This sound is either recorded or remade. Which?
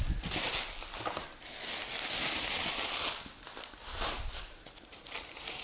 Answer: recorded